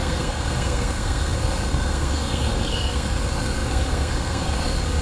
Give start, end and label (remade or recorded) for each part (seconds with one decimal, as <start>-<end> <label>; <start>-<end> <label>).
0.0-5.0 remade